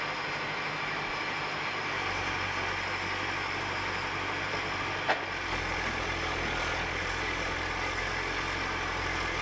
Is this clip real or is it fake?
real